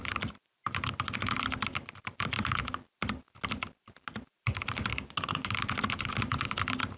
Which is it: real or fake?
real